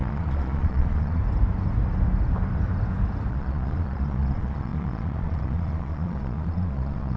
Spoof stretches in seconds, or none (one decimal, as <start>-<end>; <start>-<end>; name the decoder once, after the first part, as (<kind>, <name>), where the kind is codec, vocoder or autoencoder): 0.0-1.2 (vocoder, Vocos); 3.3-7.2